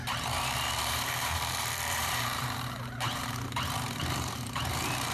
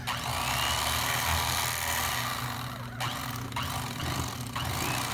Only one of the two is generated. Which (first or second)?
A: first